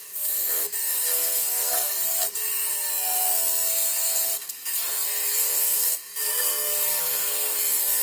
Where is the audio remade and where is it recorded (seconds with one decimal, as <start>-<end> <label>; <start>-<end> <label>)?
0.0-2.9 remade; 2.9-3.7 recorded; 3.7-8.0 remade